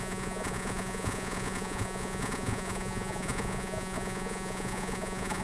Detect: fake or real fake